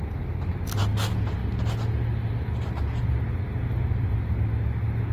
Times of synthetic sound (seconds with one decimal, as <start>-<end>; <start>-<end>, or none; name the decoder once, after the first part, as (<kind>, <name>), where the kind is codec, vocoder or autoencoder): none